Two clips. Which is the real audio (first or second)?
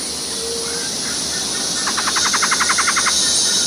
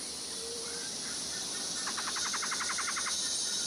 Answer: first